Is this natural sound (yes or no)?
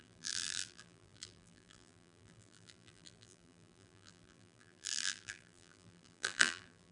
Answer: no